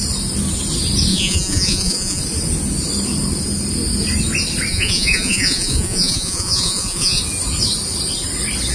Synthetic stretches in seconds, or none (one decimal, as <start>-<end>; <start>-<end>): 1.1-2.2; 4.7-7.2